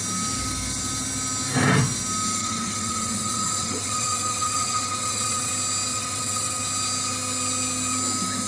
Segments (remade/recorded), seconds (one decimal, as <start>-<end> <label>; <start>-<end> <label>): 0.0-2.4 recorded; 2.4-5.5 remade; 5.5-5.9 recorded; 5.9-6.6 remade; 6.6-8.5 recorded